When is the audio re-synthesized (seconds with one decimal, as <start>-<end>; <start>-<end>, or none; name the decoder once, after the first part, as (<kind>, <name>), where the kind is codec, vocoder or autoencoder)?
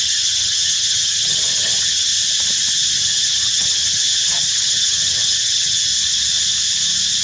0.0-2.1 (vocoder, HiFi-GAN); 2.9-5.9